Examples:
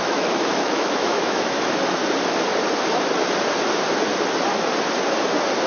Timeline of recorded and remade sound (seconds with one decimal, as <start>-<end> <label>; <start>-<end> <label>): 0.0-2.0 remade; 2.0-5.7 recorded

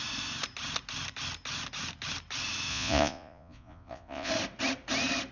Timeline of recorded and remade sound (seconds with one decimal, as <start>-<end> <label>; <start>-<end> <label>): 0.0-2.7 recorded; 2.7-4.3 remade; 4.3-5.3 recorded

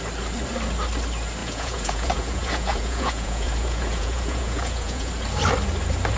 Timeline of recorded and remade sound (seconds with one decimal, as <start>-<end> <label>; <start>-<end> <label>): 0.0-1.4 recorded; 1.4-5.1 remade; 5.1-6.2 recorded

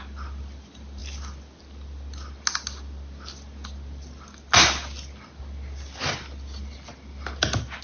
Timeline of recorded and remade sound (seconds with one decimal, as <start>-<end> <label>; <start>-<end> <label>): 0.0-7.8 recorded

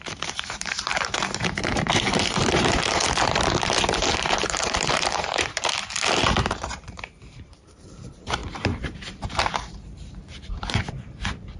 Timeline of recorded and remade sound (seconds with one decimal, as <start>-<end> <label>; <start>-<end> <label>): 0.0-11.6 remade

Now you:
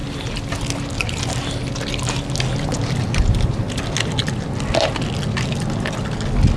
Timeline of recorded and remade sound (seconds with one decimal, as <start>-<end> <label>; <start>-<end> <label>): 0.0-6.6 recorded

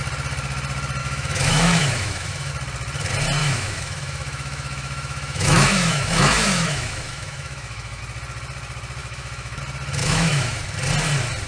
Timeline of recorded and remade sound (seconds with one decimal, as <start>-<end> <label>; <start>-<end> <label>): 0.0-1.0 recorded; 1.0-2.5 remade; 2.5-3.4 recorded; 3.4-8.0 remade; 8.0-9.0 recorded; 9.0-9.6 remade; 9.6-10.0 recorded; 10.0-10.6 remade; 10.6-11.5 recorded